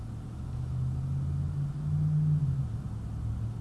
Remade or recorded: recorded